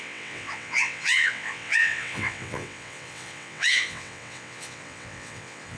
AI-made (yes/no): yes